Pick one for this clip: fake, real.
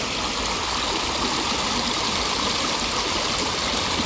real